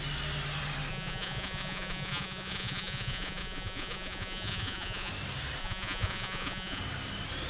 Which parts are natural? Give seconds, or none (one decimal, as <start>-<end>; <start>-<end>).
0.0-0.9; 5.1-5.6; 6.8-7.5